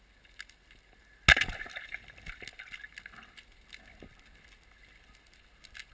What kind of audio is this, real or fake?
real